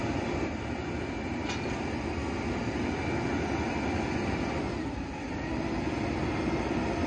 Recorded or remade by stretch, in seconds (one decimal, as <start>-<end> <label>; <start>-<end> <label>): 0.0-7.1 recorded